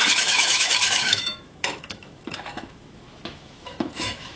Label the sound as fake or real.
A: fake